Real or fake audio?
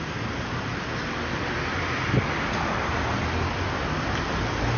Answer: real